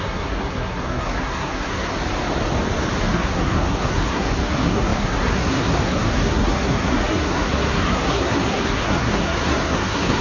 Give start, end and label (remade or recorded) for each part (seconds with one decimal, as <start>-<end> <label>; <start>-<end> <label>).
0.0-1.9 remade; 1.9-3.0 recorded; 3.0-10.2 remade